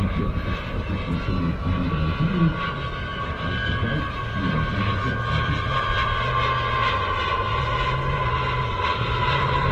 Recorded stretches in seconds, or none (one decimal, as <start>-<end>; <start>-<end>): 0.0-8.9